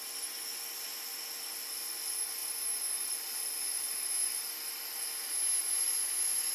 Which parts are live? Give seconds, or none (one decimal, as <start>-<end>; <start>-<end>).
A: 0.0-6.5